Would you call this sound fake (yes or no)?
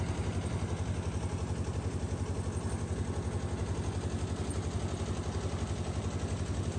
no